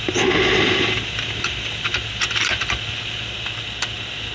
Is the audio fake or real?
real